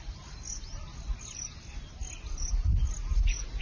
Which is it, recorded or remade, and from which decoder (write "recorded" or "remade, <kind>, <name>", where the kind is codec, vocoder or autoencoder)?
recorded